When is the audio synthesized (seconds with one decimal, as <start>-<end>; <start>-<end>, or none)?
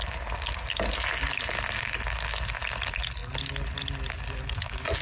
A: none